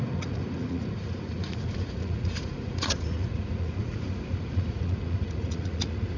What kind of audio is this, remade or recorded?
remade